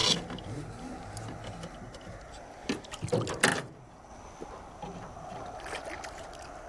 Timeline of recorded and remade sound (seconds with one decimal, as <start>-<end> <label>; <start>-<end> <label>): 0.0-6.7 recorded